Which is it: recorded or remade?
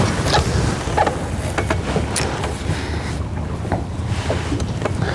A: recorded